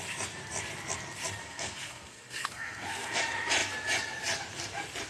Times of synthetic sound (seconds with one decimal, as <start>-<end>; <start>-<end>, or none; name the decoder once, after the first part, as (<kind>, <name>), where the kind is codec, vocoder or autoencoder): 1.4-3.2 (codec, SNAC)